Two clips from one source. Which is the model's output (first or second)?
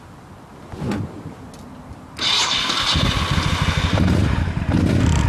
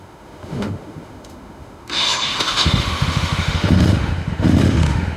second